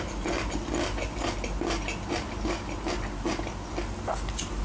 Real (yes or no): yes